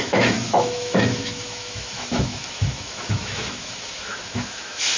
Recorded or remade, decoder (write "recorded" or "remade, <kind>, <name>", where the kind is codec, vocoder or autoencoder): remade, autoencoder, DAC-VAE